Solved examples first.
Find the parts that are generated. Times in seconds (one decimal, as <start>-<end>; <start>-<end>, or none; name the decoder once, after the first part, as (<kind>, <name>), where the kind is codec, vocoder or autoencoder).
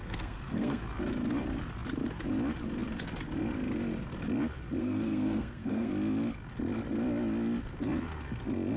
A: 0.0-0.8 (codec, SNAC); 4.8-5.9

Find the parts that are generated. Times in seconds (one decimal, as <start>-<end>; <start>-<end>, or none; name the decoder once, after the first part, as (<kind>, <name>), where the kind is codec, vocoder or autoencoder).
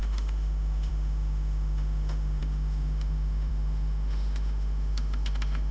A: 0.0-5.7 (autoencoder, DAC-VAE)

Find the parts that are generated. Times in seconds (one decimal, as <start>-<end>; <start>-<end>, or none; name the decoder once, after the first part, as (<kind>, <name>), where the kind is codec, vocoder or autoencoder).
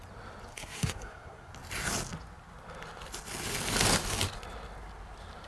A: 0.5-1.5 (codec, SNAC)